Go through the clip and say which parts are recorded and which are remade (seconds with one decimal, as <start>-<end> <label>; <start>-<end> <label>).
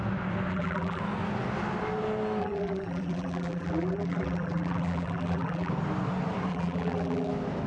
0.0-0.5 recorded; 0.5-1.0 remade; 1.0-2.4 recorded; 2.4-5.7 remade; 5.7-6.5 recorded; 6.5-7.3 remade; 7.3-7.7 recorded